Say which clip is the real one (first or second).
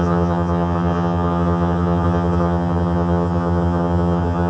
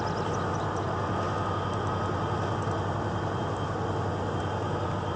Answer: second